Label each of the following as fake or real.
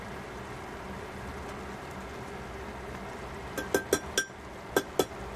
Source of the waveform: real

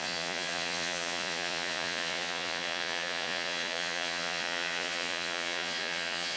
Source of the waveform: fake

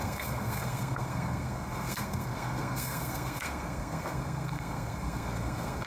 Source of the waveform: fake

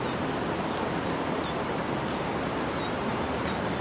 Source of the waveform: real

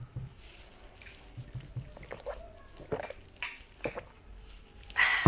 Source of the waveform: real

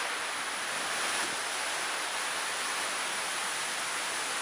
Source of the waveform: real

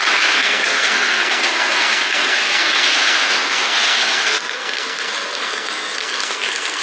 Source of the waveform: fake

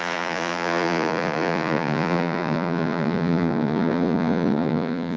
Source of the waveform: fake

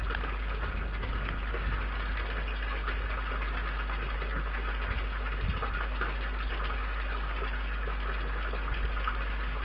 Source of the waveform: real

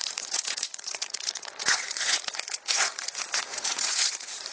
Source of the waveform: fake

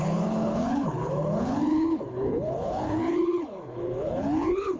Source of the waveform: fake